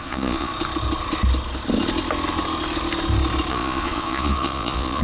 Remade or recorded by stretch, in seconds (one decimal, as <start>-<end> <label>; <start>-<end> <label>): 0.0-0.5 remade; 0.5-3.5 recorded; 3.5-5.0 remade